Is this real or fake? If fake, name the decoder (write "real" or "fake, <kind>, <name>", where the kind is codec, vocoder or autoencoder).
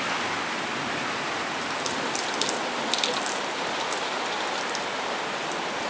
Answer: real